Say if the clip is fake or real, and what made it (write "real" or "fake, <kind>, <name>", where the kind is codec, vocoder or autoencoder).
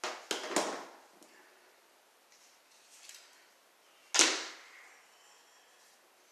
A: real